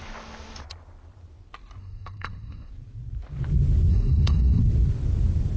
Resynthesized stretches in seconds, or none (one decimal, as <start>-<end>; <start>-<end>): 1.8-2.7; 3.9-4.6